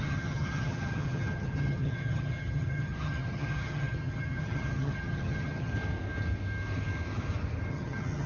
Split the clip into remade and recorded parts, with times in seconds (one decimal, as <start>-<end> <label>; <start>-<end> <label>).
0.0-5.7 remade; 5.7-7.7 recorded; 7.7-8.3 remade

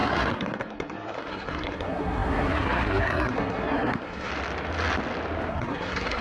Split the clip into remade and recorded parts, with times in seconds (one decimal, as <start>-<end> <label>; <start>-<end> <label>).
0.0-4.3 remade; 4.3-5.5 recorded; 5.5-6.2 remade